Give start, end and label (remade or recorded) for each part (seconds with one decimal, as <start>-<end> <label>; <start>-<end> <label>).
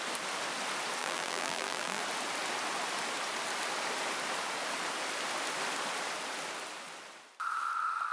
0.0-1.0 recorded; 1.0-2.0 remade; 2.0-8.1 recorded